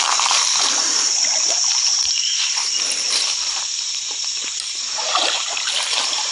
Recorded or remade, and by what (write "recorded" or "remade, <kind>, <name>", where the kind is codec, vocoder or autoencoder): remade, vocoder, BigVGAN v2